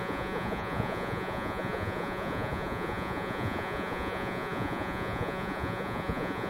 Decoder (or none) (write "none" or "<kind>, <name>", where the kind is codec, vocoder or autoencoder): vocoder, Vocos